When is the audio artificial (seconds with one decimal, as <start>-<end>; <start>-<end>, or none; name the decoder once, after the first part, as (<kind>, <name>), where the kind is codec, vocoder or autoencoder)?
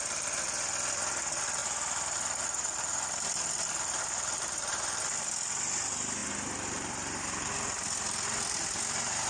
1.6-5.0 (vocoder, BigVGAN v2); 6.2-8.8